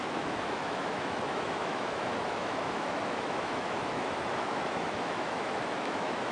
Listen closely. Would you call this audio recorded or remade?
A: remade